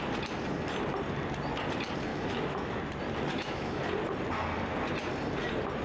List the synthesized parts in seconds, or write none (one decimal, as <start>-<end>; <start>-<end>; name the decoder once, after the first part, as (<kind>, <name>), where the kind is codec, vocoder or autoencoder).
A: 2.1-2.8 (autoencoder, DAC-VAE); 3.3-3.8